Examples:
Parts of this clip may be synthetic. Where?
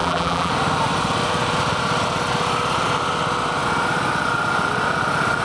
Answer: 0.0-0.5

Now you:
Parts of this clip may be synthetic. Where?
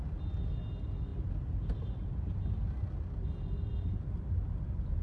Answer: none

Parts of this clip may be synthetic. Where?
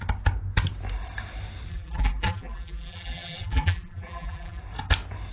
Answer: 1.7-4.6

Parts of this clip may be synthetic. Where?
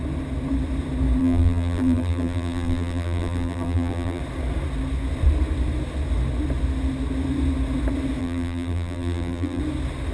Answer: 1.2-4.2; 8.2-9.6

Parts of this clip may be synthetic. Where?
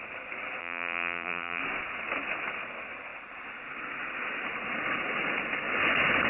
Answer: 0.6-1.6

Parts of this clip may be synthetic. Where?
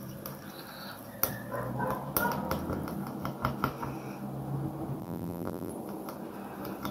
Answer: 5.0-5.7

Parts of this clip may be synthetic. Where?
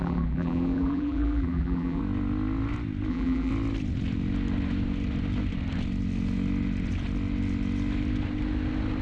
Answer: 0.0-2.0; 3.1-3.5